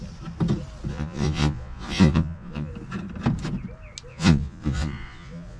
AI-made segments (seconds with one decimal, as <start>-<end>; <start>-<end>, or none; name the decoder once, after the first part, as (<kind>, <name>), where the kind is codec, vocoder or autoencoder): 0.9-2.7 (vocoder, Vocos); 4.1-5.6

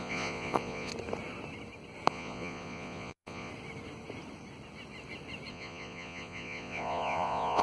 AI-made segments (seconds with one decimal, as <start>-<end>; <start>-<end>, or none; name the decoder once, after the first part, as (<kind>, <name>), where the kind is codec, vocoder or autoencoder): 0.0-0.9 (vocoder, Vocos); 2.1-3.5; 5.5-7.6

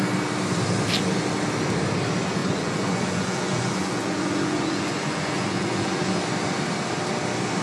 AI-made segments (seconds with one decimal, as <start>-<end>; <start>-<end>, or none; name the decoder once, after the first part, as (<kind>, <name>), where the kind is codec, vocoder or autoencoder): 2.4-6.1 (vocoder, Vocos)

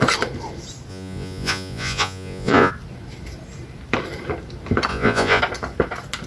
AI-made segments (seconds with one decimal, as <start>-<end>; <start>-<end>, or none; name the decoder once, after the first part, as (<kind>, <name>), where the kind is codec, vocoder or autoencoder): 0.9-2.7 (vocoder, Vocos); 4.9-5.4

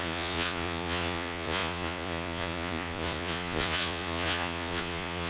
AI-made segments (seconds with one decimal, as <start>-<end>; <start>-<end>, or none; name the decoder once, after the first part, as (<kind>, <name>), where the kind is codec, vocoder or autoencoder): 0.0-5.3 (vocoder, Vocos)

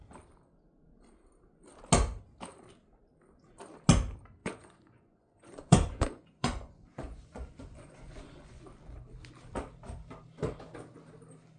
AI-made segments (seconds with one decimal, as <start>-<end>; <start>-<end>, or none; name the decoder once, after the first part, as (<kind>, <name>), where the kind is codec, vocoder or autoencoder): 4.4-8.6 (vocoder, Vocos)

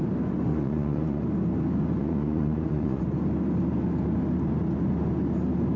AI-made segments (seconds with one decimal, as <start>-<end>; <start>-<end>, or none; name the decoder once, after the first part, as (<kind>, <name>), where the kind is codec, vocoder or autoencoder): 0.5-1.2 (vocoder, Vocos); 2.0-3.0